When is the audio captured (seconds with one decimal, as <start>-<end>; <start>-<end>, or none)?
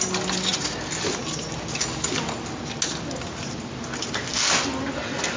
0.0-5.4